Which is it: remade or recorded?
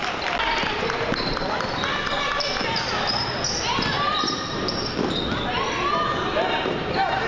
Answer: recorded